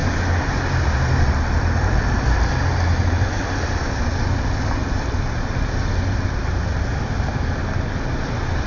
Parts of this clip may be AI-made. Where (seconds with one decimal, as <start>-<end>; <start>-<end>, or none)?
none